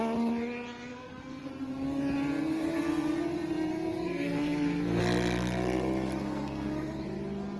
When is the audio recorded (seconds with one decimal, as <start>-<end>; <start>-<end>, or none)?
0.0-0.9; 1.5-3.7; 5.0-6.2; 7.0-7.6

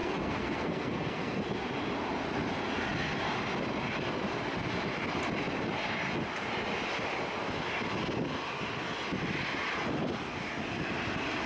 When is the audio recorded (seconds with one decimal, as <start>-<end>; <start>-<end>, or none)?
1.4-11.5